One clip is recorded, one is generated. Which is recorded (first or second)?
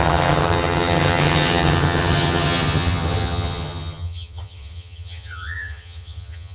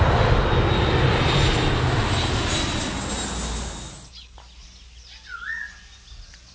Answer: second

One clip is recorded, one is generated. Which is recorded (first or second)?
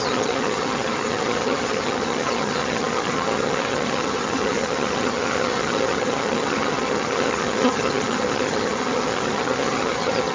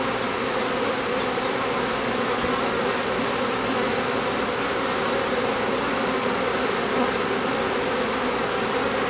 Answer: second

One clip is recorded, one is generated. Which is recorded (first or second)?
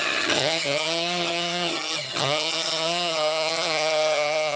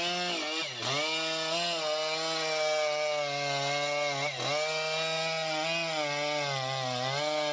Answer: second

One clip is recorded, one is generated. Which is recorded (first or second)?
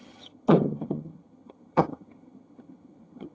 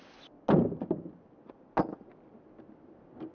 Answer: second